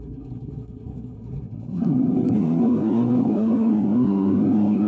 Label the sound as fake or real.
fake